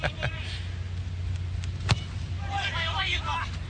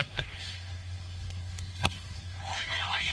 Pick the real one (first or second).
first